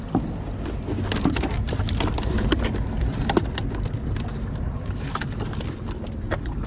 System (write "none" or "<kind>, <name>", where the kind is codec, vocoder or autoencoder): none